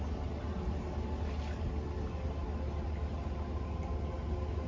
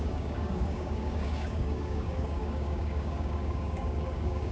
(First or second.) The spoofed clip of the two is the second